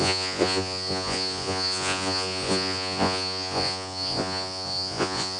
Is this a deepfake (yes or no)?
yes